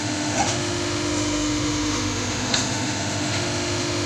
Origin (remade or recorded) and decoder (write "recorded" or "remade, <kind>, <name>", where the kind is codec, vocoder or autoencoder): remade, autoencoder, DAC-VAE